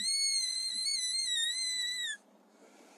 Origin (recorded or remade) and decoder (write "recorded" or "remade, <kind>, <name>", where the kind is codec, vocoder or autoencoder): remade, vocoder, BigVGAN v2